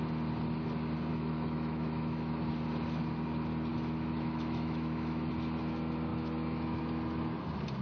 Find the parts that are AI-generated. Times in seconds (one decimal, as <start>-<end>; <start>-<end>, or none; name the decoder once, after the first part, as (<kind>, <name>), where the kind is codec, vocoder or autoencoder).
1.1-2.5 (autoencoder, DAC-VAE); 3.7-5.3; 6.1-6.8